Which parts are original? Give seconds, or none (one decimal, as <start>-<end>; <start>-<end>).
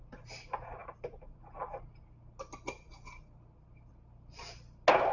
0.0-5.1